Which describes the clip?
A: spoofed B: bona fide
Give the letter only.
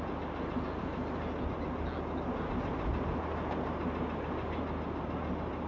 B